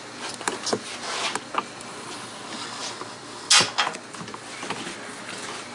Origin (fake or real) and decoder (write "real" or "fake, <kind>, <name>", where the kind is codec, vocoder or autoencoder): real